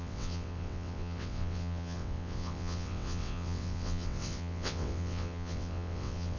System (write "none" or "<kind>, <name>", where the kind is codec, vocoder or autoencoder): vocoder, WaveNeXt